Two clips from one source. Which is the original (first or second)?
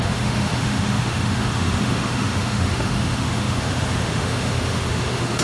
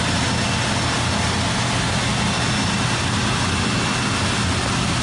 second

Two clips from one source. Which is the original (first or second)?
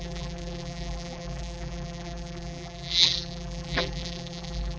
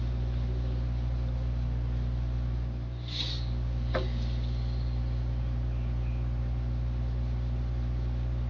second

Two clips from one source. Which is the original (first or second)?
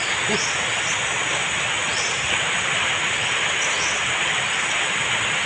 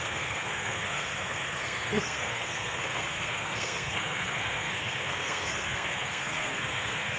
first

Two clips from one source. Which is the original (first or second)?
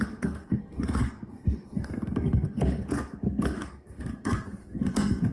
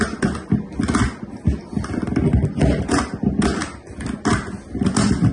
second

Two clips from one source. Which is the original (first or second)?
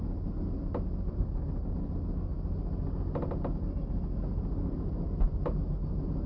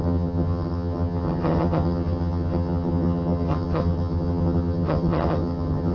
first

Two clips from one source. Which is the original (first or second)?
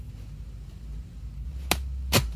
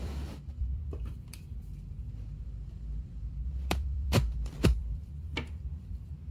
first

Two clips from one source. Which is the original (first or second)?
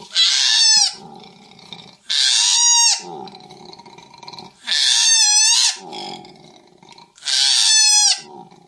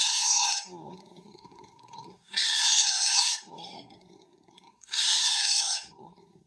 first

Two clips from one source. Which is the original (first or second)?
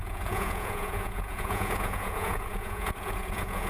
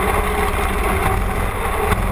second